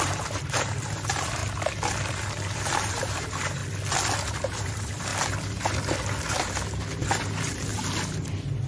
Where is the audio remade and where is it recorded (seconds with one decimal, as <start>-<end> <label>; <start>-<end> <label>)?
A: 0.0-1.4 remade; 1.4-2.1 recorded; 2.1-3.6 remade; 3.6-4.3 recorded; 4.3-5.1 remade; 5.1-6.3 recorded; 6.3-7.7 remade; 7.7-8.7 recorded